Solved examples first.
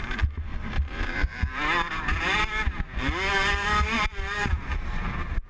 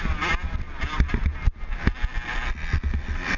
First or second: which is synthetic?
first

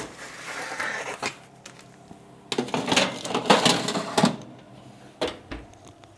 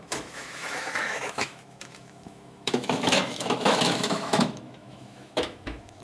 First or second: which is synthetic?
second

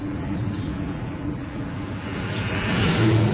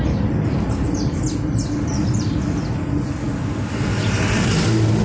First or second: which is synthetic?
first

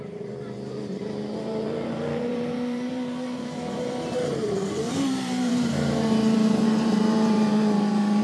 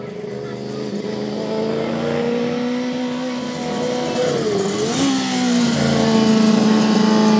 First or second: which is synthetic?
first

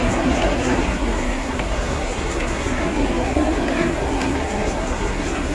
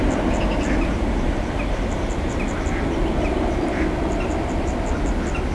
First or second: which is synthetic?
first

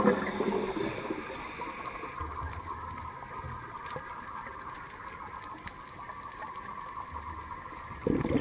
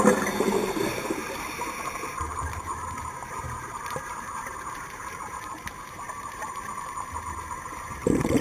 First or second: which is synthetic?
second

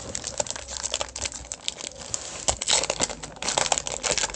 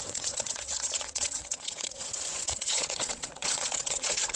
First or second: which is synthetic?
second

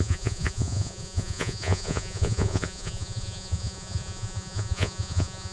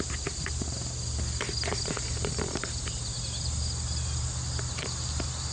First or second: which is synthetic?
first